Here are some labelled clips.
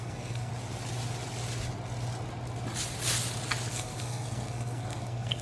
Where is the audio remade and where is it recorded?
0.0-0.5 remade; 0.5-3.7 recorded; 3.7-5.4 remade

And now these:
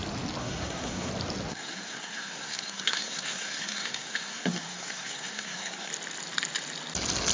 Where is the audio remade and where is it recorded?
0.0-0.4 recorded; 0.4-1.1 remade; 1.1-1.5 recorded; 1.5-5.9 remade; 5.9-7.3 recorded

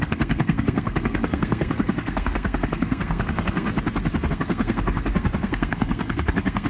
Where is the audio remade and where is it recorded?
0.0-3.7 remade; 3.7-4.3 recorded; 4.3-6.7 remade

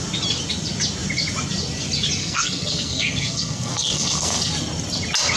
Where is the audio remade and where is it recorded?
0.0-2.2 recorded; 2.2-4.5 remade; 4.5-5.4 recorded

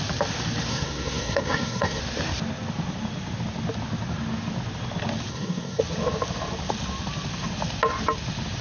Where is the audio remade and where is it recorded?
0.0-0.7 recorded; 0.7-2.0 remade; 2.0-5.3 recorded; 5.3-5.8 remade; 5.8-8.6 recorded

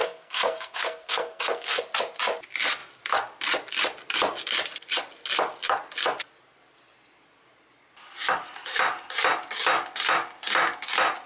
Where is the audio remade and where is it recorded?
0.0-1.8 remade; 1.8-11.3 recorded

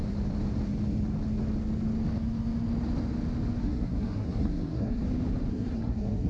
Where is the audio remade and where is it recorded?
0.0-3.6 recorded; 3.6-5.0 remade; 5.0-5.5 recorded; 5.5-6.3 remade

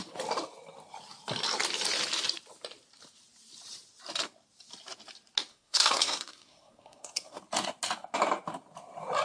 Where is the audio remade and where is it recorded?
0.0-5.5 recorded; 5.5-7.4 remade; 7.4-9.2 recorded